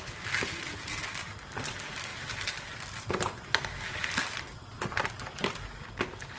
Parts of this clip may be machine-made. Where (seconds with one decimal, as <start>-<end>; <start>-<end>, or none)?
none